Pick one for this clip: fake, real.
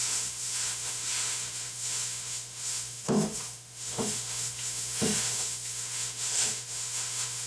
fake